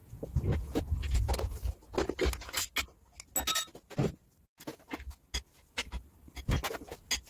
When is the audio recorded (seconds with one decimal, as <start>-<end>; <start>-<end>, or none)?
1.3-7.3